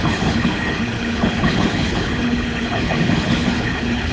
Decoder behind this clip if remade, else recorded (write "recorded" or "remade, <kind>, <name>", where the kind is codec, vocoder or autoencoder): remade, codec, HILCodec